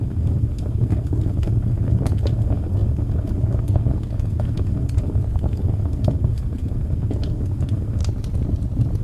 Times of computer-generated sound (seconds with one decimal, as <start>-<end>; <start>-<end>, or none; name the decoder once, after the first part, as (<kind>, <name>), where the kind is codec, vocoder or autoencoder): 0.0-8.0 (codec, SNAC)